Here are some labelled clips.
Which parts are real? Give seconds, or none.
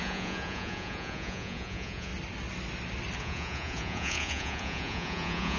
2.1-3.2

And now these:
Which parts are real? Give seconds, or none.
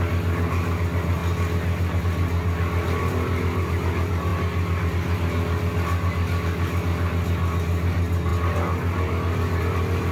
0.0-10.1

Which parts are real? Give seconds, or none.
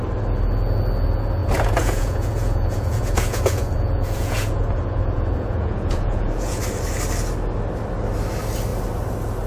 0.0-1.4; 6.6-9.5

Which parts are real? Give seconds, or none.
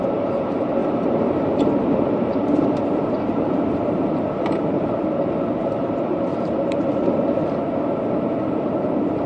7.6-8.4